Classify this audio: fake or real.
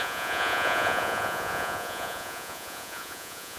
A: fake